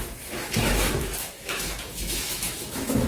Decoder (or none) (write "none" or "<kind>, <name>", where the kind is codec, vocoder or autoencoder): autoencoder, DAC-VAE